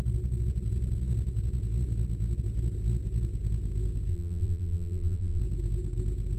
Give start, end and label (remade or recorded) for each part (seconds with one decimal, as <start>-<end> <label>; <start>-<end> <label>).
0.0-4.1 recorded; 4.1-5.4 remade; 5.4-6.4 recorded

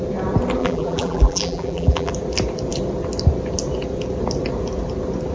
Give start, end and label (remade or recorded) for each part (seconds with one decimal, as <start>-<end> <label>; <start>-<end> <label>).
0.0-0.6 recorded; 0.6-2.1 remade; 2.1-5.3 recorded